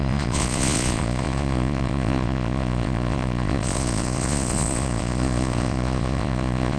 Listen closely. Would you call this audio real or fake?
fake